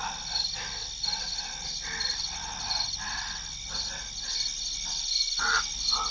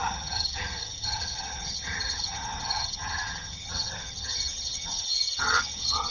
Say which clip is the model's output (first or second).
second